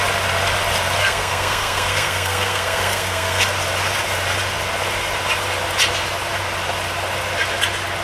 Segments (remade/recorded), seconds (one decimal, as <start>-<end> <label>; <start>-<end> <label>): 0.0-1.0 recorded; 1.0-3.4 remade; 3.4-8.0 recorded